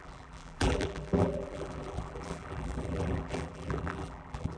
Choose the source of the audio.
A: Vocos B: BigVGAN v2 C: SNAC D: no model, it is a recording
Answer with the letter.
B